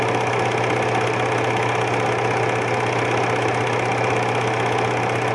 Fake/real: real